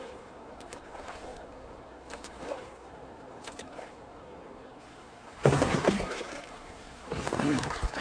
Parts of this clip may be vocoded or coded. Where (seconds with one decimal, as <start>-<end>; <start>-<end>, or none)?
0.0-8.0

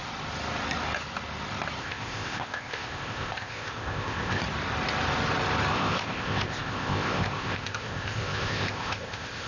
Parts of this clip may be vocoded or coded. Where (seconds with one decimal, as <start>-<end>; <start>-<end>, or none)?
1.8-4.4; 5.7-9.5

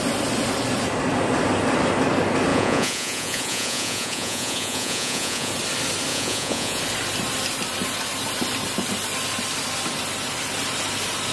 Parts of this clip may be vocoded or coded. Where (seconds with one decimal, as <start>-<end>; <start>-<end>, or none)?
2.5-5.5; 6.1-6.8

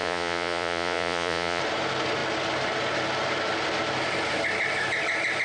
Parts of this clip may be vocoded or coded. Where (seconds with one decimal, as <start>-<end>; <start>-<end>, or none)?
0.0-1.6

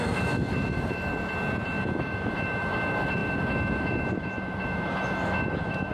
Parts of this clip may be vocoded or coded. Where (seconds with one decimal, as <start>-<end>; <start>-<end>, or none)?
0.0-1.1; 1.8-5.9

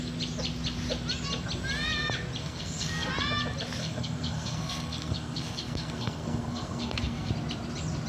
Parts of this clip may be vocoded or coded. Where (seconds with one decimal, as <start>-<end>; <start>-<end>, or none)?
2.4-3.1; 3.8-7.3

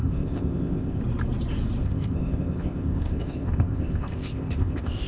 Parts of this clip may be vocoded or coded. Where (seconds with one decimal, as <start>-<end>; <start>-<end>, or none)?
0.0-1.0; 1.8-5.1